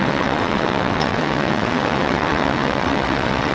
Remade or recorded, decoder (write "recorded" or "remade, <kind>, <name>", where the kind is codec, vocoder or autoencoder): remade, vocoder, WaveNeXt